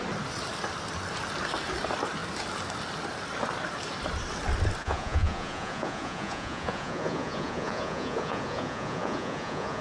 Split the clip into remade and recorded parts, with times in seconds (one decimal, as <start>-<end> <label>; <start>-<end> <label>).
0.0-4.8 recorded; 4.8-9.8 remade